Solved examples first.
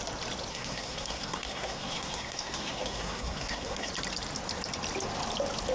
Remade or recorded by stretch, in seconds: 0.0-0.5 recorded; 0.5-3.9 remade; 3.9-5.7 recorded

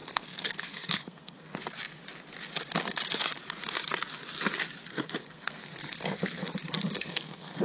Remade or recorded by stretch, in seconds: 0.0-1.5 remade; 1.5-4.9 recorded; 4.9-6.4 remade; 6.4-6.9 recorded; 6.9-7.6 remade